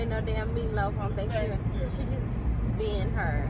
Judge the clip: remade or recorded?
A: recorded